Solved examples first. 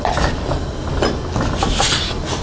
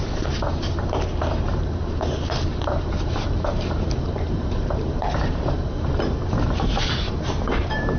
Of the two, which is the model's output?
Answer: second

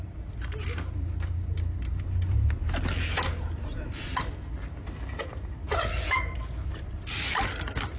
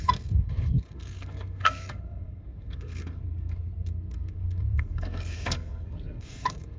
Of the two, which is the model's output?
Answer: second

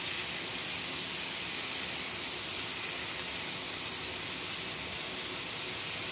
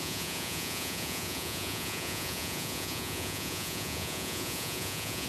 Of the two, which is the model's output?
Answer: second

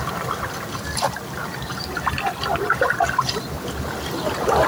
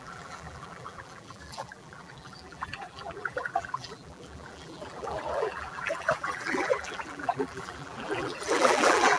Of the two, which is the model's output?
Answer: second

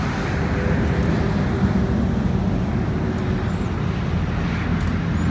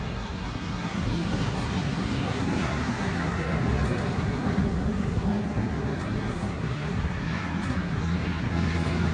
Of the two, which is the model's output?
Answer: second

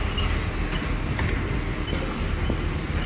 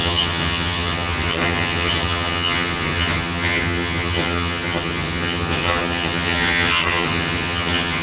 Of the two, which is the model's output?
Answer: second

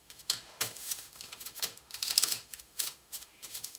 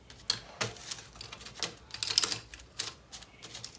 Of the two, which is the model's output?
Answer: first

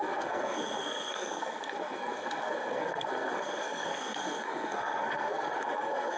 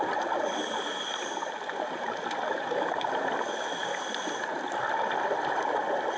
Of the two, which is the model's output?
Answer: first